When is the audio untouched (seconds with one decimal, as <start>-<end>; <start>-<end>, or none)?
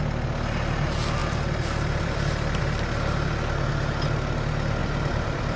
0.0-1.2; 2.6-4.8